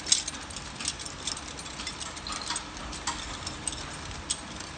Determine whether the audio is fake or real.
real